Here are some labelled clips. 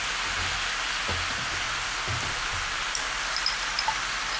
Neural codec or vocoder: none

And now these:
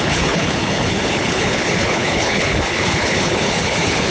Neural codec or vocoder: codec, HILCodec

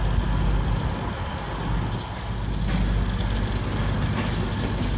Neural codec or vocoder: none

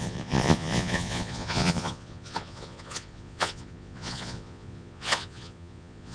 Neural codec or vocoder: vocoder, Vocos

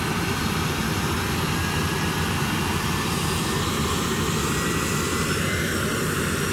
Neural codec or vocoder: none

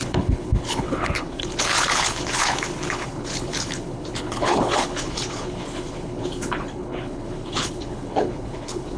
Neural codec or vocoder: codec, HILCodec